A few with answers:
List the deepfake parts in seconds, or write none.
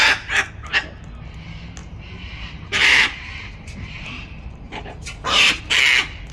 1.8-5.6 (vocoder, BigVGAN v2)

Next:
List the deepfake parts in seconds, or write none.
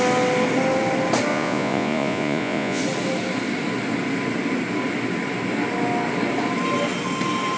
1.3-2.8 (vocoder, Vocos)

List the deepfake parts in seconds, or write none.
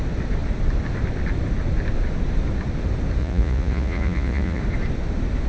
3.2-4.6 (vocoder, Vocos)